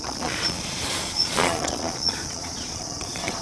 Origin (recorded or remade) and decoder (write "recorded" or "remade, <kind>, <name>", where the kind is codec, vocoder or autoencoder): remade, vocoder, Vocos